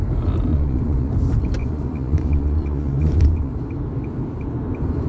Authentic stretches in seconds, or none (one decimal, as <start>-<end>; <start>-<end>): 0.0-0.5; 1.1-1.6; 3.5-5.1